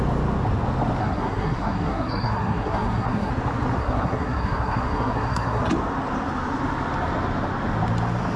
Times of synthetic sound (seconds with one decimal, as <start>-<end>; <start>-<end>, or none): 1.0-3.3; 3.8-5.6